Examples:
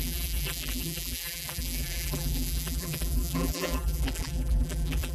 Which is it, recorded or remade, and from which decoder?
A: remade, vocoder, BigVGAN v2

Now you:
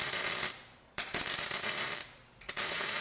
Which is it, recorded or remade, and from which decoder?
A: remade, vocoder, BigVGAN v2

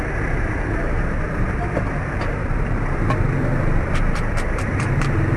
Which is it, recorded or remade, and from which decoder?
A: remade, vocoder, BigVGAN v2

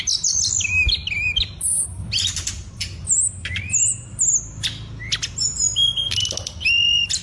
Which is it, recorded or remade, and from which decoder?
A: recorded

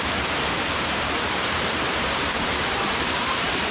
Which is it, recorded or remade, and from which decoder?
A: remade, vocoder, BigVGAN v2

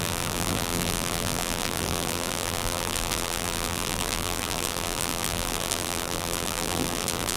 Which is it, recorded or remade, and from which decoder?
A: remade, vocoder, BigVGAN v2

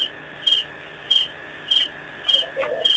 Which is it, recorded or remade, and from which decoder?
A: recorded